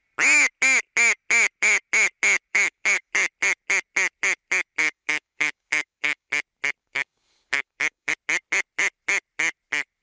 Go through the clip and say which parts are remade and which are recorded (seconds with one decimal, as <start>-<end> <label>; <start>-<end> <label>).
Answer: 0.0-2.5 recorded; 2.5-3.1 remade; 3.1-4.8 recorded; 4.8-6.3 remade; 6.3-6.8 recorded; 6.8-8.1 remade; 8.1-10.0 recorded